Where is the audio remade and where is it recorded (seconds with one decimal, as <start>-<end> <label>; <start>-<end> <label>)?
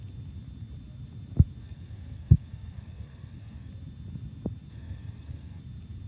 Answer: 0.0-1.6 recorded; 1.6-3.7 remade; 3.7-4.7 recorded; 4.7-5.6 remade; 5.6-6.1 recorded